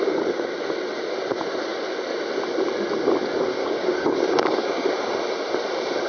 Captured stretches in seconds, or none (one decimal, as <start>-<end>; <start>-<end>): 0.0-3.6; 5.1-6.1